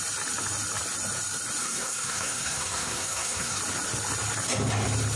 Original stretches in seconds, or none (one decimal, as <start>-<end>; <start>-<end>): 0.0-1.6; 3.6-5.2